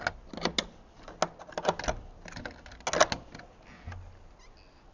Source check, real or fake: real